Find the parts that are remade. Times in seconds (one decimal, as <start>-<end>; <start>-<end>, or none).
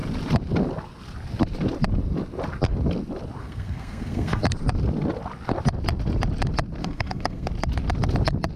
3.4-4.4; 6.8-7.5